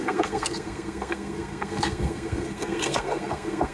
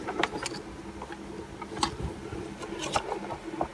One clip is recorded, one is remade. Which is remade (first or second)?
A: first